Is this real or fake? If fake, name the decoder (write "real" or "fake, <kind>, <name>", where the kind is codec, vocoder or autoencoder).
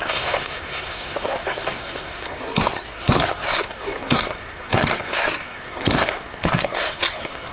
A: fake, codec, SNAC